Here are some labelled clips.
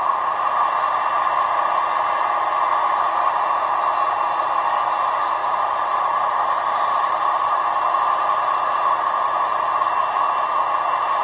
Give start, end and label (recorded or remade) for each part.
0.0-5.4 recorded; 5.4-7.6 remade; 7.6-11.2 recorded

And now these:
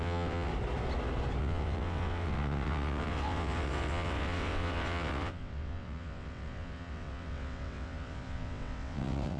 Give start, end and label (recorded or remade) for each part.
0.0-0.5 remade; 0.5-1.4 recorded; 1.4-9.4 remade

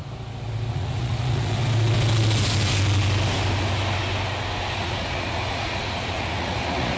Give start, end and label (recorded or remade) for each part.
0.0-0.7 recorded; 0.7-1.6 remade; 1.6-4.7 recorded; 4.7-7.0 remade

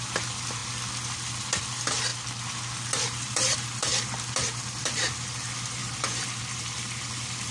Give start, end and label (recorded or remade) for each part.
0.0-2.1 remade; 2.1-2.8 recorded; 2.8-3.9 remade; 3.9-4.8 recorded; 4.8-5.8 remade; 5.8-6.4 recorded; 6.4-7.5 remade

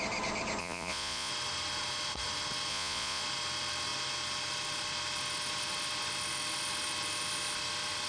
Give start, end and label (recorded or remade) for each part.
0.0-0.6 recorded; 0.6-1.3 remade; 1.3-2.7 recorded; 2.7-3.2 remade; 3.2-8.1 recorded

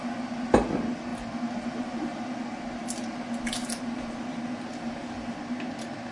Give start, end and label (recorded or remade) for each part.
0.0-3.6 recorded; 3.6-5.4 remade; 5.4-6.1 recorded

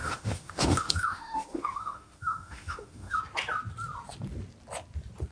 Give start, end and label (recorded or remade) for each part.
0.0-3.2 remade; 3.2-5.3 recorded